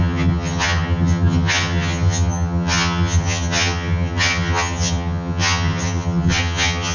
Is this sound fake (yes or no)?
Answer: yes